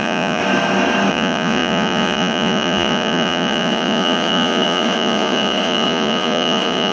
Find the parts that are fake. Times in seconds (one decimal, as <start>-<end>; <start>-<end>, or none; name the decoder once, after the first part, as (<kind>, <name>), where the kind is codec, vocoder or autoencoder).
0.0-0.4 (vocoder, Vocos); 1.1-6.9